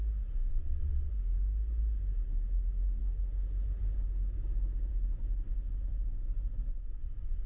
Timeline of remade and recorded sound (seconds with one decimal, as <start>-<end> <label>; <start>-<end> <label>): 0.0-0.5 recorded; 0.5-1.1 remade; 1.1-6.7 recorded; 6.7-7.5 remade